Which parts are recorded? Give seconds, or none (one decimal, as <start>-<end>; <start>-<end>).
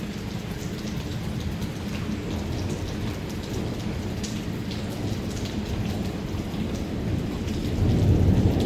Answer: 0.0-8.7